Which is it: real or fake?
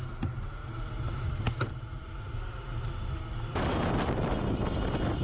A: real